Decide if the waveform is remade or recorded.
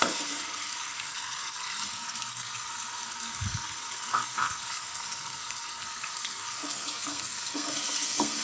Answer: remade